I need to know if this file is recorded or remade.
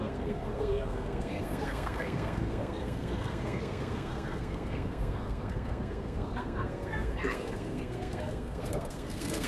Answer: remade